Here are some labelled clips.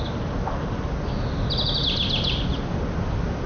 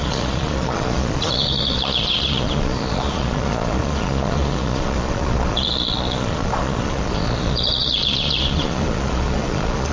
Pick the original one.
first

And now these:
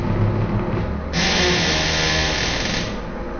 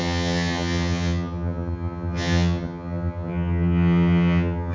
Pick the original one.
first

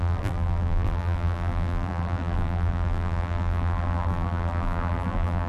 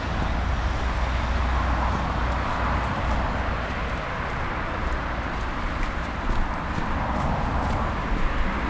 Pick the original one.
second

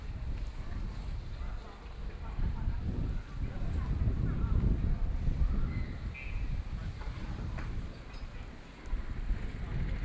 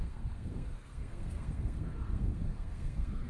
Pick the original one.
first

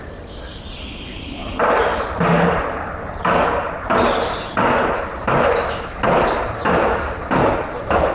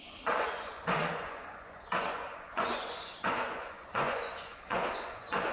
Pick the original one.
first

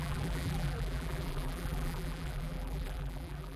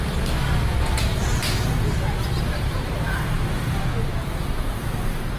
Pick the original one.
second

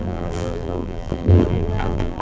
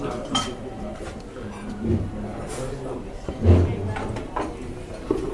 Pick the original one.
second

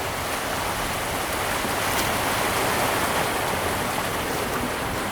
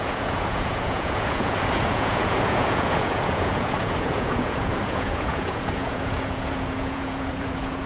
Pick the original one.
first